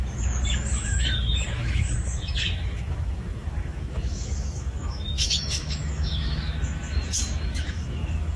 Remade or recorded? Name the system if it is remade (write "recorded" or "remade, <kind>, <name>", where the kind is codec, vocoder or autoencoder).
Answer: remade, autoencoder, DAC-VAE